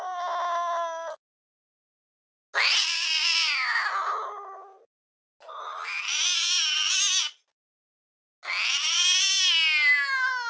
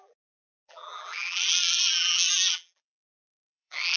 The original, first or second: first